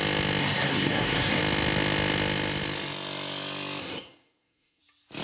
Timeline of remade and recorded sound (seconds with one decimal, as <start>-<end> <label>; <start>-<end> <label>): 0.0-0.4 recorded; 0.4-1.4 remade; 1.4-3.8 recorded; 3.8-4.8 remade; 4.8-5.2 recorded